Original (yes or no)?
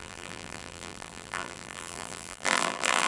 no